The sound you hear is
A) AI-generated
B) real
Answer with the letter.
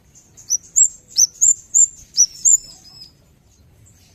A